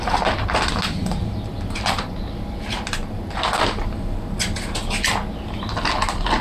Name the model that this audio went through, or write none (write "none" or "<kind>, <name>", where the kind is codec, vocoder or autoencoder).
none